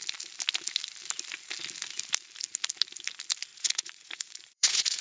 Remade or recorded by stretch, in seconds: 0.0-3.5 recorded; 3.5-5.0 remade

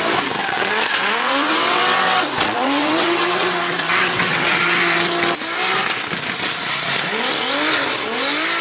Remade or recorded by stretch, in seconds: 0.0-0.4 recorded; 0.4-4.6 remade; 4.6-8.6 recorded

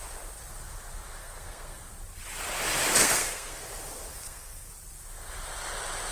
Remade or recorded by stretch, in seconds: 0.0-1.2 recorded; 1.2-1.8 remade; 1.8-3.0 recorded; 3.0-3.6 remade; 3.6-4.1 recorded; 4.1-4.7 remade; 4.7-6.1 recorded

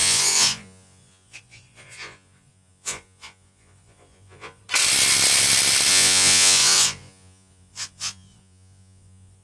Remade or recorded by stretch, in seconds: 0.0-4.6 remade; 4.6-5.9 recorded; 5.9-9.4 remade

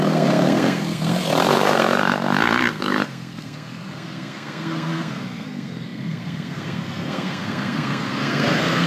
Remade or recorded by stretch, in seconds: 0.0-8.9 remade

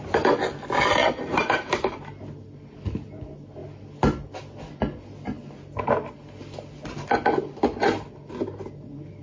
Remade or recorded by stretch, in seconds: 0.0-1.0 recorded; 1.0-1.7 remade; 1.7-9.2 recorded

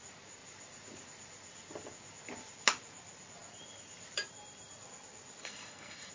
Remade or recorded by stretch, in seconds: 0.0-5.4 recorded; 5.4-6.1 remade

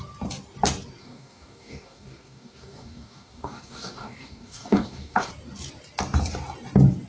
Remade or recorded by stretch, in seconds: 0.0-1.0 recorded; 1.0-5.3 remade; 5.3-7.1 recorded